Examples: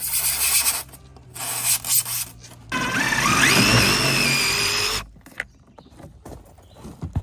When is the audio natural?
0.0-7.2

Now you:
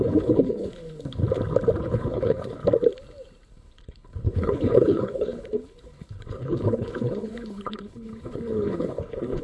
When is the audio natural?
1.2-1.8; 2.6-3.5

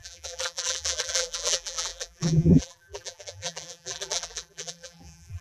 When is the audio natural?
none

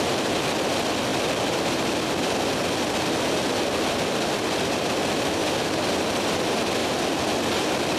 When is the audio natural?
0.0-8.0